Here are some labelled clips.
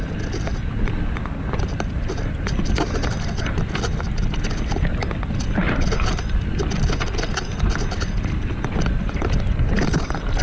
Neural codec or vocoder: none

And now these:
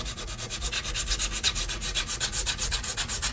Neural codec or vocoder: vocoder, Vocos